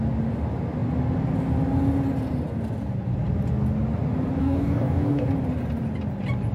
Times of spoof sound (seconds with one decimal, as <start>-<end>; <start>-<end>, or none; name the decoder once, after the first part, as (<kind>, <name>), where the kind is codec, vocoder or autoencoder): 4.4-5.3 (codec, DAC)